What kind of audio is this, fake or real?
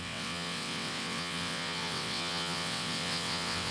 fake